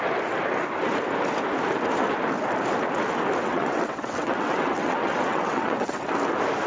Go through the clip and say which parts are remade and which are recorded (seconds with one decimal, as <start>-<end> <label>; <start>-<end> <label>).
0.0-3.4 recorded; 3.4-6.1 remade; 6.1-6.7 recorded